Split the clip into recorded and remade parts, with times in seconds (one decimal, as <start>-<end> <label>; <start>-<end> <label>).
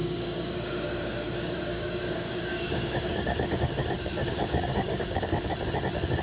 0.0-3.7 remade; 3.7-4.2 recorded; 4.2-5.4 remade; 5.4-6.2 recorded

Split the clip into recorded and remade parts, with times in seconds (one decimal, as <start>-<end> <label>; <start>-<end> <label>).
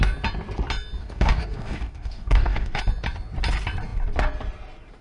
0.0-1.0 recorded; 1.0-2.8 remade; 2.8-5.0 recorded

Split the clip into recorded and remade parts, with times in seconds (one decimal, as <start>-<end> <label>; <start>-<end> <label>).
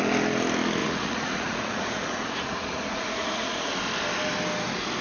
0.0-0.8 recorded; 0.8-3.8 remade; 3.8-5.0 recorded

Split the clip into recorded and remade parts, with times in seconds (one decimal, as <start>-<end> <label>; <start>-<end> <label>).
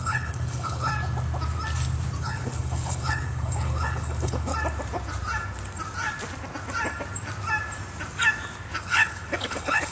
0.0-0.9 remade; 0.9-2.2 recorded; 2.2-4.5 remade; 4.5-8.8 recorded; 8.8-9.9 remade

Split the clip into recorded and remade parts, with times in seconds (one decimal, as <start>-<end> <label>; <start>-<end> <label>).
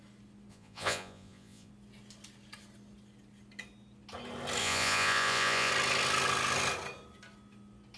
0.0-0.5 recorded; 0.5-1.7 remade; 1.7-4.6 recorded; 4.6-5.7 remade; 5.7-8.0 recorded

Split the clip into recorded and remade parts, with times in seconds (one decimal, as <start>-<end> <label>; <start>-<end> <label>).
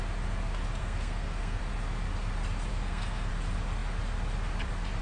0.0-0.8 recorded; 0.8-1.6 remade; 1.6-2.7 recorded; 2.7-3.3 remade; 3.3-5.0 recorded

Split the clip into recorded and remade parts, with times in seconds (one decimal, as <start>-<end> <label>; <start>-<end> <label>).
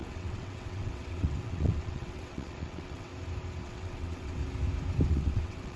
0.0-3.1 remade; 3.1-3.6 recorded; 3.6-4.4 remade; 4.4-5.1 recorded; 5.1-5.8 remade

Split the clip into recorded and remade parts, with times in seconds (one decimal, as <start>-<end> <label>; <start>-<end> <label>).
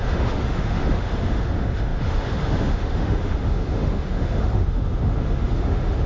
0.0-6.1 remade